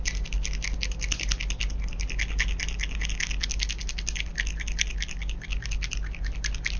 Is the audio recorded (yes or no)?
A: yes